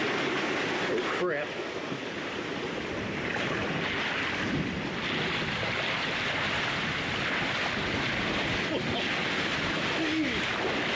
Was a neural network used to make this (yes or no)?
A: no